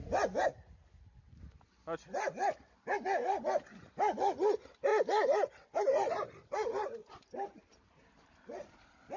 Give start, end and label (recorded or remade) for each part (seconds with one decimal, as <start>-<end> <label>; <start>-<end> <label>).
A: 0.0-0.5 recorded; 0.5-1.4 remade; 1.4-7.0 recorded; 7.0-8.0 remade; 8.0-9.2 recorded